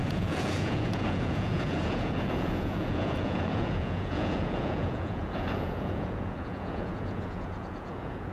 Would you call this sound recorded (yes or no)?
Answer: no